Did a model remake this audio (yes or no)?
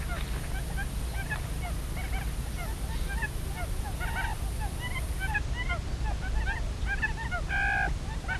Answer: no